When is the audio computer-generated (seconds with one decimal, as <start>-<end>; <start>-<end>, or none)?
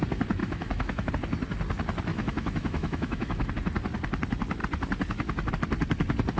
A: 0.4-1.1; 2.1-3.5